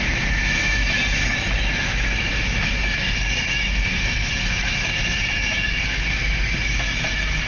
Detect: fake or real fake